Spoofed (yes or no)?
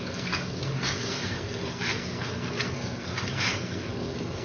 yes